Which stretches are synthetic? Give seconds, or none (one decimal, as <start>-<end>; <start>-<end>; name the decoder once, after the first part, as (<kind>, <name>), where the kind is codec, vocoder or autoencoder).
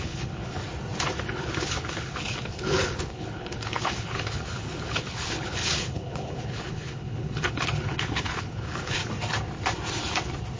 0.0-0.6 (codec, HILCodec); 1.2-9.0